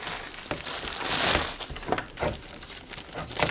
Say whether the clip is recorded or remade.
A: recorded